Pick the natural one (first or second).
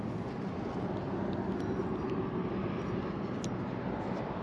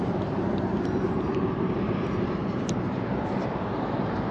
first